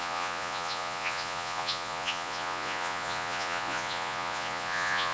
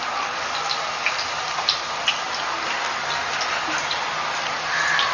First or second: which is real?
second